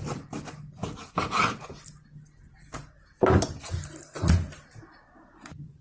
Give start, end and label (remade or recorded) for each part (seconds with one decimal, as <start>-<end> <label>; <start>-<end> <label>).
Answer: 0.0-5.8 recorded